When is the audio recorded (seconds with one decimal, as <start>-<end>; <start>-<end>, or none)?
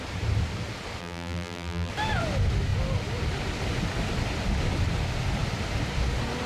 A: 0.0-1.0; 1.9-6.5